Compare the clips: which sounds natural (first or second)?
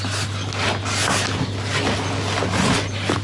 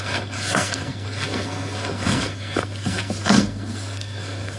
first